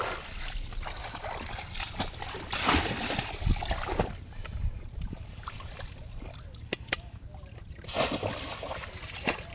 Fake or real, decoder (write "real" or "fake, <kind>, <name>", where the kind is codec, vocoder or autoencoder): real